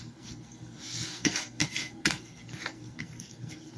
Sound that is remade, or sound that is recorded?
remade